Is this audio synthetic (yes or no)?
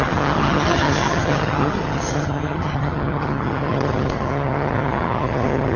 yes